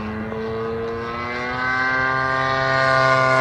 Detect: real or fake real